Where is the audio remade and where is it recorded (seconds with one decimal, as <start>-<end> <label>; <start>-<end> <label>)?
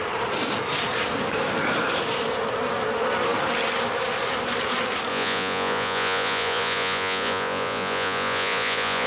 0.0-5.1 recorded; 5.1-9.1 remade